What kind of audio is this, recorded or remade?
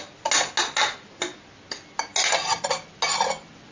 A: recorded